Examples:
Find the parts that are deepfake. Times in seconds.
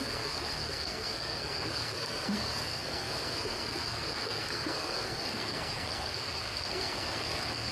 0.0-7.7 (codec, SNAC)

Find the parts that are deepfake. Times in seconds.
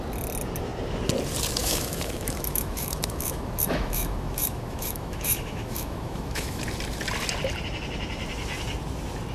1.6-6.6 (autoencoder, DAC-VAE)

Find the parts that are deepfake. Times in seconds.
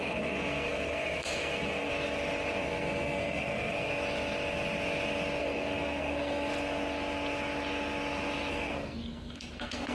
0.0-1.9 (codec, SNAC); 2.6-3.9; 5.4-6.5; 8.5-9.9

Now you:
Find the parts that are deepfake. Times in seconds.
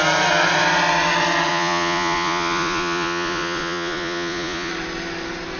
1.5-4.7 (vocoder, Vocos)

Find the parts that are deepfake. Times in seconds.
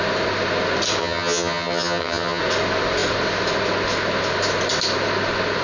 1.0-2.4 (vocoder, HiFi-GAN)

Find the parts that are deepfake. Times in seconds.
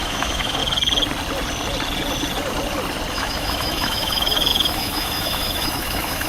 0.0-0.6 (autoencoder, DAC-VAE); 3.1-6.3